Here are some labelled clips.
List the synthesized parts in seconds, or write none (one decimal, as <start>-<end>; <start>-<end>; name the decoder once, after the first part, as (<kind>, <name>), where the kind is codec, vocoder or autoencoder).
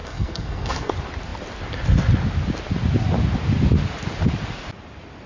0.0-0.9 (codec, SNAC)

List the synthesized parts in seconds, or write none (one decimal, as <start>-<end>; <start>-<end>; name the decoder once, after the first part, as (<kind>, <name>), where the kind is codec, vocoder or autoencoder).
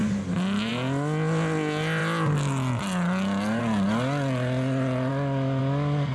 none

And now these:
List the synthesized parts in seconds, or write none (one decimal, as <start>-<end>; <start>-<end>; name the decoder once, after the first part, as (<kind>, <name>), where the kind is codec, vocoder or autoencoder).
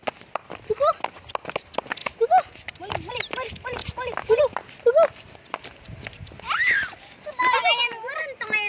none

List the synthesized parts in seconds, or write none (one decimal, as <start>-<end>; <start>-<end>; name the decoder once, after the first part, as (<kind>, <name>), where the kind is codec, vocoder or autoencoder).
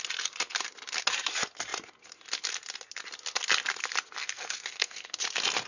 4.2-5.2 (codec, SNAC)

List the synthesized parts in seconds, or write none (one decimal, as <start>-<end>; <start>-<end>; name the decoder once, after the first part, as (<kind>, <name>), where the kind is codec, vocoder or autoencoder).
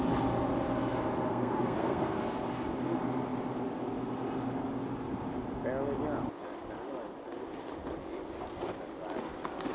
1.3-2.2 (codec, SNAC)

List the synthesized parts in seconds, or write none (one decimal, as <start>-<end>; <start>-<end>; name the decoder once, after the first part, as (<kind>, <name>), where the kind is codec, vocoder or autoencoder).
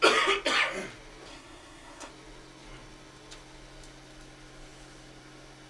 1.3-2.1 (codec, SNAC)